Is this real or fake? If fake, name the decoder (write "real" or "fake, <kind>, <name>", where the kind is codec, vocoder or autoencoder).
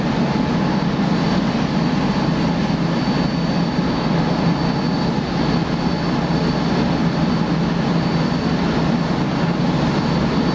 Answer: real